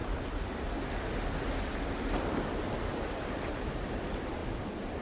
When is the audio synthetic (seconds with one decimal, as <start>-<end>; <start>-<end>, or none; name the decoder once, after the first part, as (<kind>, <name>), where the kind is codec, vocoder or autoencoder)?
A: 3.0-5.0 (vocoder, BigVGAN v2)